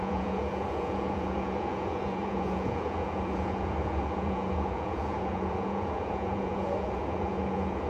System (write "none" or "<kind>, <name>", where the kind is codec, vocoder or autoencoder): vocoder, Vocos